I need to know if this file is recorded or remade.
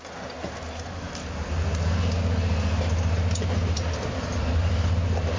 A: recorded